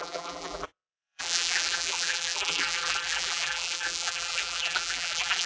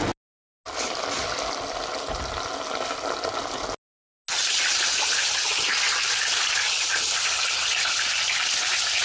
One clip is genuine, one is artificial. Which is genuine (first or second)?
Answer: second